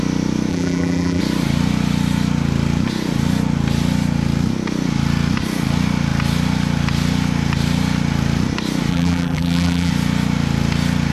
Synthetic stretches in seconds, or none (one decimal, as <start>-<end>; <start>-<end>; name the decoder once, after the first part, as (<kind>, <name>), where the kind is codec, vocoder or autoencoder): 0.5-1.2 (vocoder, BigVGAN v2); 8.9-9.9